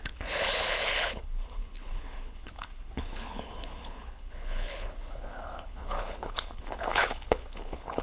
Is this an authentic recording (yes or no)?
no